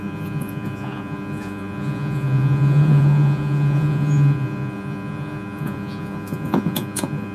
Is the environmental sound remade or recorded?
remade